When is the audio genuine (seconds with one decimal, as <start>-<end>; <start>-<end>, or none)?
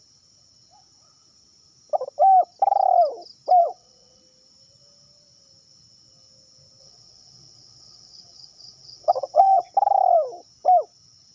0.0-3.6; 4.2-6.8; 9.7-11.3